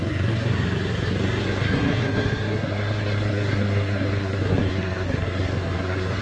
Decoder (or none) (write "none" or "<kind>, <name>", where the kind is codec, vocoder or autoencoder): codec, SNAC